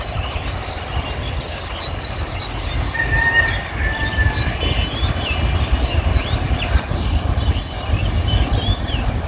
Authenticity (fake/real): real